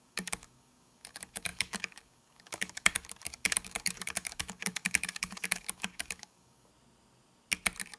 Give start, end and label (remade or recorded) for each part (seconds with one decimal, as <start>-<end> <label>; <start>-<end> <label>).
0.0-6.7 remade; 6.7-8.0 recorded